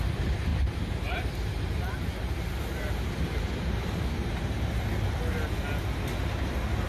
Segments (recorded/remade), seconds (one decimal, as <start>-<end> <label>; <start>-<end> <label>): 0.0-0.5 recorded; 0.5-4.6 remade; 4.6-6.9 recorded